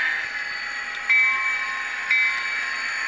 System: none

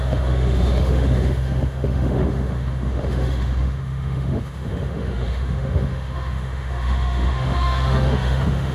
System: autoencoder, DAC-VAE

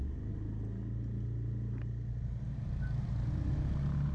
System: none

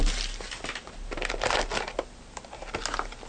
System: none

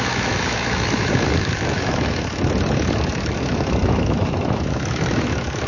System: autoencoder, DAC-VAE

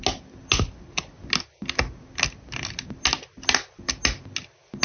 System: none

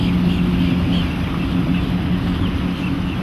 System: none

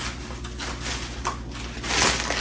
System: none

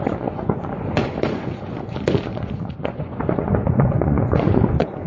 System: vocoder, Vocos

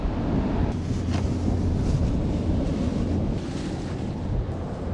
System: none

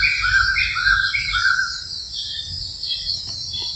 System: none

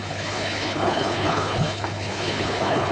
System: codec, HILCodec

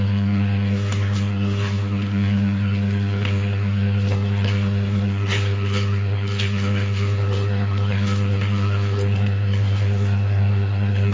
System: codec, SNAC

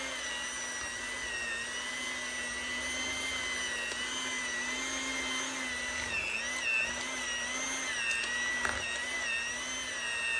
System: none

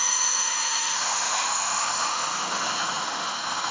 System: autoencoder, DAC-VAE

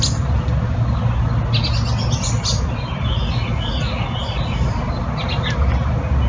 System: none